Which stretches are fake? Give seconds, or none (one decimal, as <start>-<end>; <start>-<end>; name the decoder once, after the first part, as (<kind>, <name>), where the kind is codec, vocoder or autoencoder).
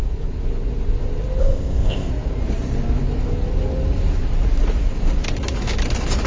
1.4-2.1 (codec, ZipCodec)